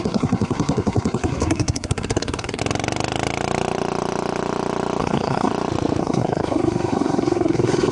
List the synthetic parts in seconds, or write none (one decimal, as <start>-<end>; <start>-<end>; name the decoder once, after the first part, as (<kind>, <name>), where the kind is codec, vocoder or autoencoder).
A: 0.0-2.6 (codec, SNAC); 5.0-5.5; 6.0-7.9